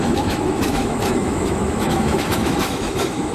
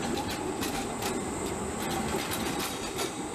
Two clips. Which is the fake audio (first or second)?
first